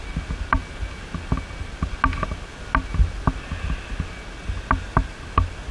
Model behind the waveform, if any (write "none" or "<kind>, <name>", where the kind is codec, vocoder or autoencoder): none